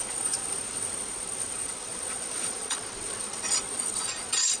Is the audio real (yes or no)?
no